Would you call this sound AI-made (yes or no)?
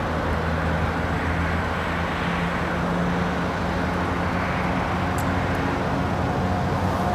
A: no